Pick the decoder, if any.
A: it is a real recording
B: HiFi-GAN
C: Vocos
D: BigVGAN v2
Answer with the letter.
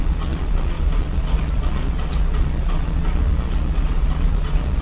C